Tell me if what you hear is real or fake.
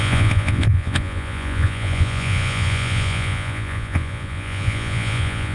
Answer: fake